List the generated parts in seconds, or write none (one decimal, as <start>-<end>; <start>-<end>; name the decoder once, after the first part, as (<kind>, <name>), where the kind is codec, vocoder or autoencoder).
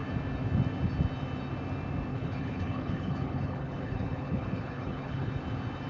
2.1-5.3 (codec, HILCodec)